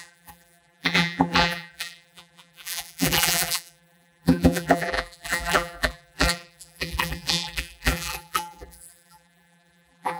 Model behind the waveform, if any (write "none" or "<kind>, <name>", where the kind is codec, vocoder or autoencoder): vocoder, BigVGAN v2